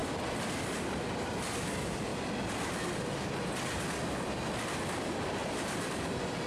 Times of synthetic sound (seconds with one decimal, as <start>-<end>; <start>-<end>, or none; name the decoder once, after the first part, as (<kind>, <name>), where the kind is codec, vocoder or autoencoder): none